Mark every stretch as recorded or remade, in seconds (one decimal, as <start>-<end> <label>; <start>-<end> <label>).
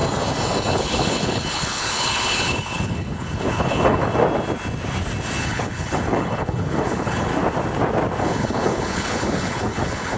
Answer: 0.0-0.7 recorded; 0.7-4.0 remade; 4.0-5.4 recorded; 5.4-7.3 remade; 7.3-8.2 recorded; 8.2-10.2 remade